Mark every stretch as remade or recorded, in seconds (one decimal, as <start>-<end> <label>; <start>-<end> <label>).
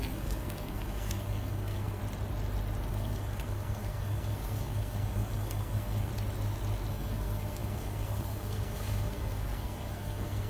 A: 0.0-2.0 remade; 2.0-2.9 recorded; 2.9-6.1 remade; 6.1-6.9 recorded; 6.9-10.5 remade